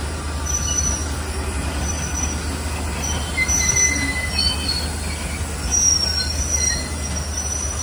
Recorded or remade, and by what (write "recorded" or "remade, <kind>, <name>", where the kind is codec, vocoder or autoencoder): recorded